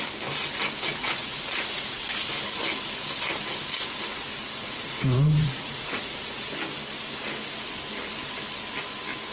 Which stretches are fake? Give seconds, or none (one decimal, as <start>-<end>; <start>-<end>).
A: 1.0-2.3; 4.1-6.5